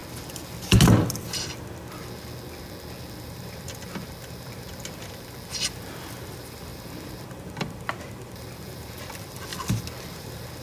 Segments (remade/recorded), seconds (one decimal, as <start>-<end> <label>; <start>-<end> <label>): 0.0-3.0 recorded; 3.0-9.5 remade; 9.5-10.0 recorded; 10.0-10.6 remade